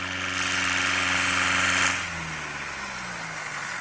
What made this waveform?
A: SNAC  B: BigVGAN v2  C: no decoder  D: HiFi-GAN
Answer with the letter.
C